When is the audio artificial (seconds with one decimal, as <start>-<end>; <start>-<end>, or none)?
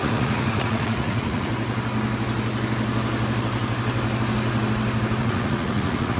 0.0-1.5; 5.2-6.2